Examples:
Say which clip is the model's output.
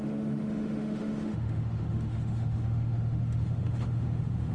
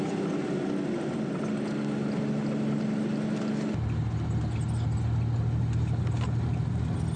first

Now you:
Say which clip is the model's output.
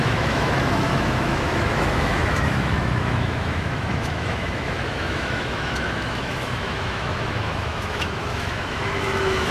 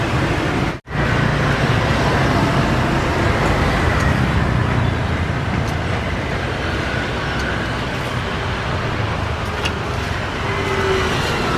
first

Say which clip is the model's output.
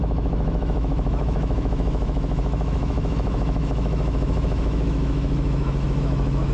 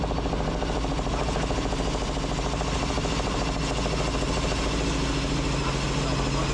first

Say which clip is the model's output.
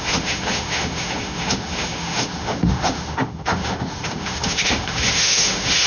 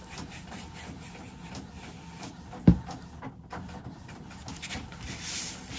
first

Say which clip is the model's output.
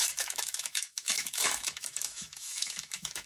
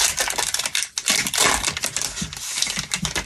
first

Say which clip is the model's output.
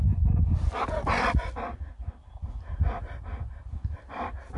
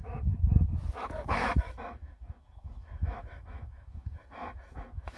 second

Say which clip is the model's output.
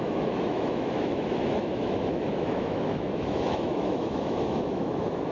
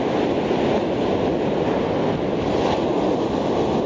first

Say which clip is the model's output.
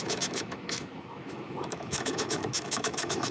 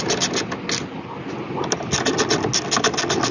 first